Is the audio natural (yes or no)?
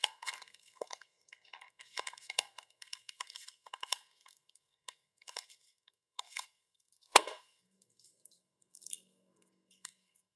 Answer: no